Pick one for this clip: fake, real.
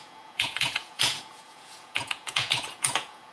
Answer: fake